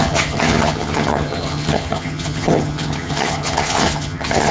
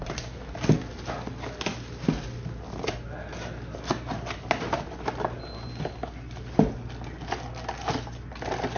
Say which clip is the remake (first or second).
first